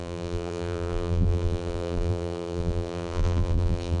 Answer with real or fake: fake